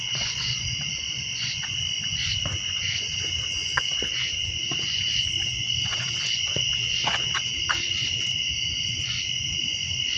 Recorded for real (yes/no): no